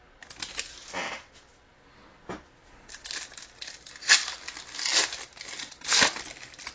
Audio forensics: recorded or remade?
recorded